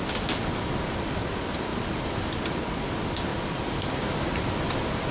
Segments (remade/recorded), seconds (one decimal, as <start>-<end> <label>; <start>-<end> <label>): 0.0-1.7 recorded; 1.7-2.6 remade; 2.6-3.3 recorded; 3.3-5.1 remade